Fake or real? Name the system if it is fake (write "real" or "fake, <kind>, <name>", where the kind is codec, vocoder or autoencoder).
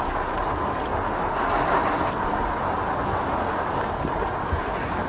real